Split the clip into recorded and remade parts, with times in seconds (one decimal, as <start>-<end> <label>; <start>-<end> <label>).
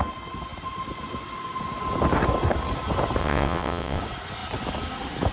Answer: 0.0-3.2 recorded; 3.2-4.0 remade; 4.0-5.3 recorded